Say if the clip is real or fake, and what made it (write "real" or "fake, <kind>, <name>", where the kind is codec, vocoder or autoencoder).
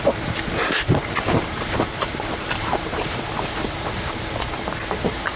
fake, vocoder, BigVGAN v2